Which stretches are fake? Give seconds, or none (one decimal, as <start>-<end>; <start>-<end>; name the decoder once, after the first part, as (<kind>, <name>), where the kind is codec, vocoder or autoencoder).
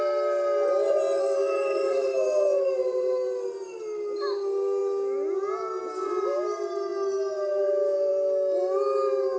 1.2-2.6 (codec, SNAC)